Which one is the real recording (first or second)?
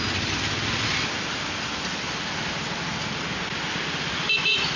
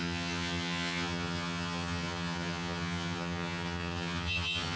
first